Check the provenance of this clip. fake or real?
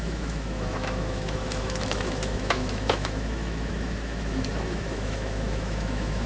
fake